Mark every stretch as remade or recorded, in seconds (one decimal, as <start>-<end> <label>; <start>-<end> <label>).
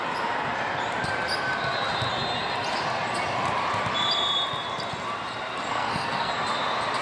0.0-5.7 recorded; 5.7-6.3 remade; 6.3-7.0 recorded